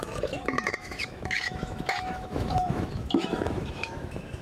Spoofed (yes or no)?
yes